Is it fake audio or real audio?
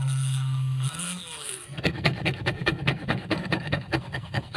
fake